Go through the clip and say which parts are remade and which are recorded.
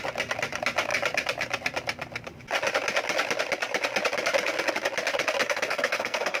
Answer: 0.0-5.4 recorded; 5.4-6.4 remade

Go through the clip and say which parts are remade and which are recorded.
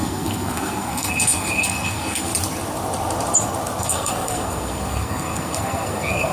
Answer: 0.0-2.3 remade; 2.3-3.8 recorded; 3.8-6.3 remade